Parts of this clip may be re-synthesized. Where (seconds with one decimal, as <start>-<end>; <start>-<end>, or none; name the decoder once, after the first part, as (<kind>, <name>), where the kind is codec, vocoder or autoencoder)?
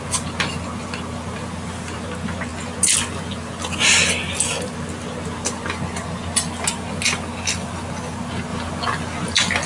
none